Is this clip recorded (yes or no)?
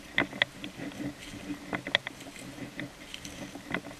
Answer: yes